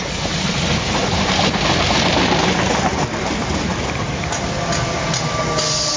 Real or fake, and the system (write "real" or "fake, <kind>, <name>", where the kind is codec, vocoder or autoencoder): real